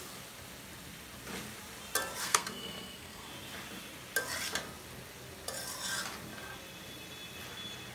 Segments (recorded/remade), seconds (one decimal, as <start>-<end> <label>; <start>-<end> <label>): 0.0-2.2 recorded; 2.2-3.3 remade; 3.3-7.9 recorded